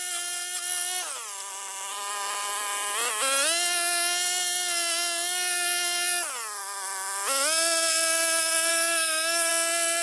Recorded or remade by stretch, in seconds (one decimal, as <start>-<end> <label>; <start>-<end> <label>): 0.0-8.7 recorded; 8.7-9.5 remade; 9.5-10.0 recorded